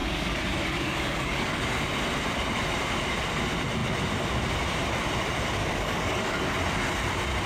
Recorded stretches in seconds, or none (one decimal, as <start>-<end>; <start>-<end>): 1.6-5.6; 6.5-7.5